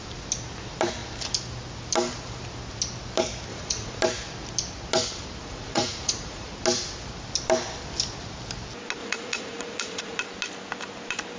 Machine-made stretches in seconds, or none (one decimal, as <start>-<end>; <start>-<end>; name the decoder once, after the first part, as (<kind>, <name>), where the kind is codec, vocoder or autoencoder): 3.5-4.0 (vocoder, Vocos); 5.4-6.5; 9.0-10.2